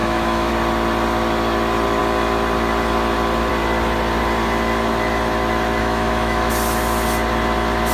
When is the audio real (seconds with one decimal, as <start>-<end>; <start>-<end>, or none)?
0.5-5.8; 6.5-7.9